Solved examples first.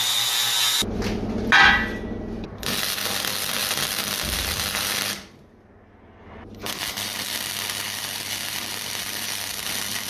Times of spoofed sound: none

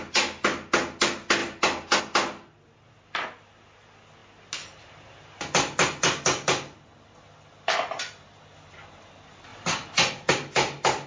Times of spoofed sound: none

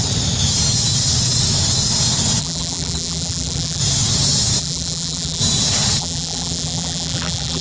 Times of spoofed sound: 2.4-3.8; 4.6-5.4; 6.0-7.6

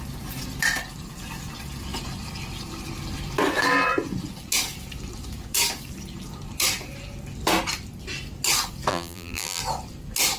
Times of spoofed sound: 8.9-9.6

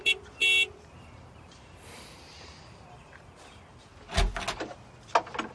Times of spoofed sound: 0.0-0.4; 0.9-3.9

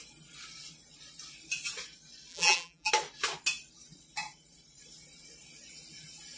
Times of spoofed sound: 2.3-2.9

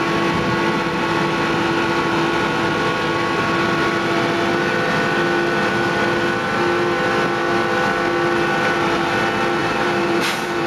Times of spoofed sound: 9.6-10.7